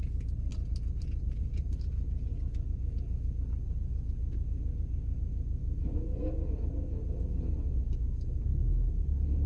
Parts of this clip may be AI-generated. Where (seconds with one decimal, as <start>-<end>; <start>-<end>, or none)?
2.3-2.9; 5.6-6.5

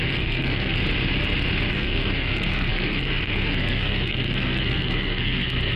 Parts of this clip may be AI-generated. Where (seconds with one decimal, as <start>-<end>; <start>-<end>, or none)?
0.0-0.8; 1.7-5.8